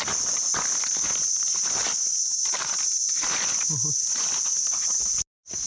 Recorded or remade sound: recorded